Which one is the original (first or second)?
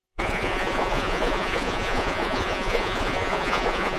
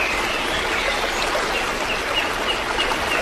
second